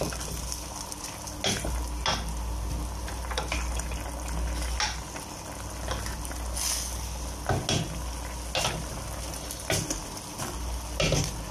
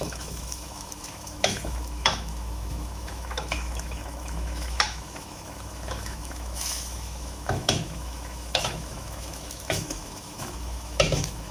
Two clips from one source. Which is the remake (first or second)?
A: second